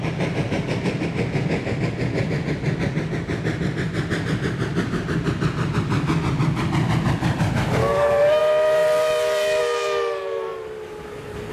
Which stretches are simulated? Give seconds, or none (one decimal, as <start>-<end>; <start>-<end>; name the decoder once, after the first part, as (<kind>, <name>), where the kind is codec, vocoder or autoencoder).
7.8-8.4 (codec, DAC)